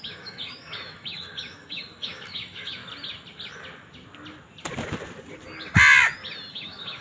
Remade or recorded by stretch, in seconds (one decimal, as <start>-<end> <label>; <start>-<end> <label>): 0.0-2.8 remade; 2.8-6.5 recorded; 6.5-7.0 remade